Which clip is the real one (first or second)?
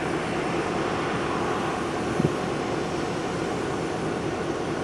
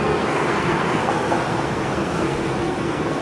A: first